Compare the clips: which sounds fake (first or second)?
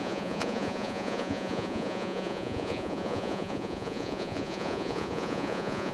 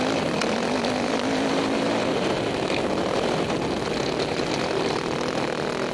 first